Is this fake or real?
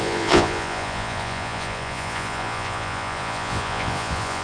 fake